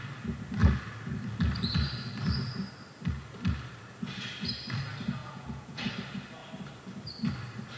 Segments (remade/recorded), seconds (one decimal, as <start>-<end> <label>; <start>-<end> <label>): 0.0-5.2 recorded; 5.2-5.9 remade; 5.9-7.8 recorded